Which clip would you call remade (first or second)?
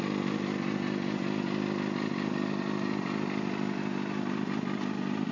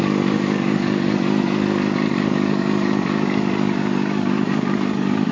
second